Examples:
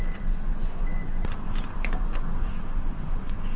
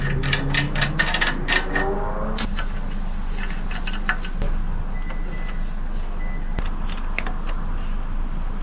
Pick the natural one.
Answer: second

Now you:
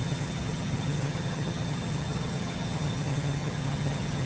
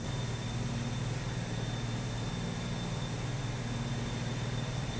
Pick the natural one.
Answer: second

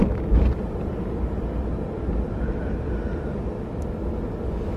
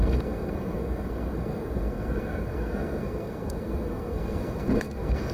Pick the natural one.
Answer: first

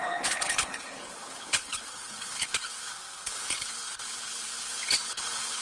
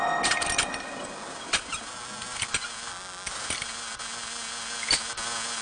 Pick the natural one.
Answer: second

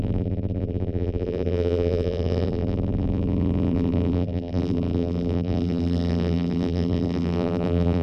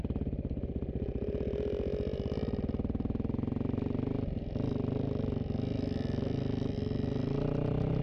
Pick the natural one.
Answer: second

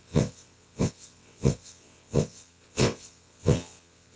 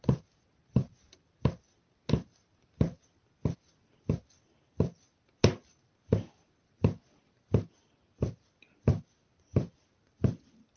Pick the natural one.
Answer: second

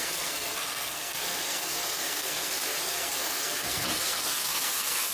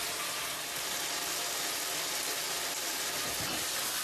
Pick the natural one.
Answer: second